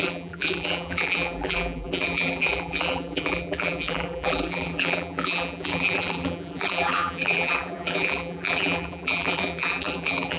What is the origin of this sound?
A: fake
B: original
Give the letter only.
A